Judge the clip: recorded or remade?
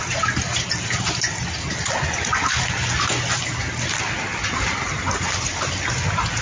recorded